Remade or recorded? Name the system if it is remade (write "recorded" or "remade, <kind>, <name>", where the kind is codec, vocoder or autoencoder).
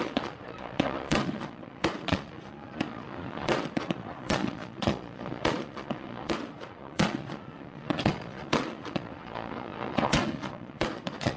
remade, vocoder, Vocos